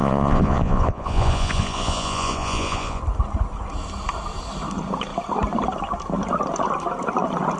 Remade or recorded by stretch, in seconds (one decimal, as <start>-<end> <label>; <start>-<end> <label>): 0.0-3.0 remade; 3.0-7.6 recorded